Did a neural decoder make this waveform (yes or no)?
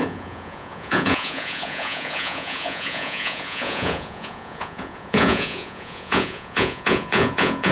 yes